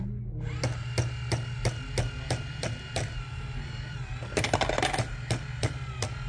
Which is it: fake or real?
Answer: real